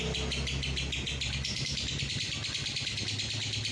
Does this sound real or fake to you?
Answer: real